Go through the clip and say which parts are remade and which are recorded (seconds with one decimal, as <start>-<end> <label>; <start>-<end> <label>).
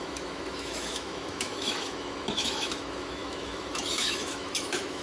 0.0-5.0 remade